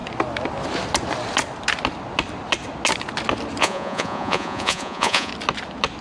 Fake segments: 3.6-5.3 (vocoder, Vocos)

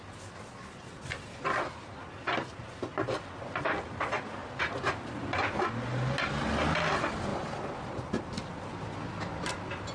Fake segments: none

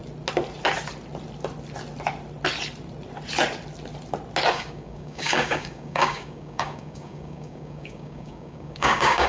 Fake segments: 4.5-9.3 (codec, DAC)

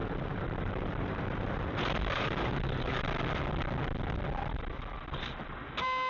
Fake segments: 0.0-3.2 (vocoder, BigVGAN v2)

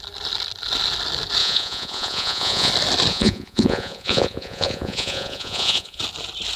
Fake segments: 1.4-2.7 (vocoder, Vocos); 3.1-6.0